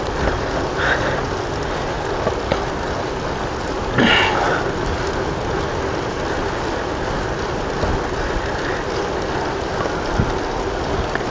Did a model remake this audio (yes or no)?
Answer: no